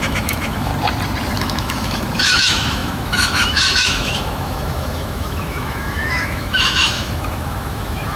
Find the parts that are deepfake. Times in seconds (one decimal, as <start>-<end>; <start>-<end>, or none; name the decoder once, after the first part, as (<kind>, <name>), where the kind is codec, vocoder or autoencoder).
0.0-0.7 (autoencoder, DAC-VAE); 1.4-8.2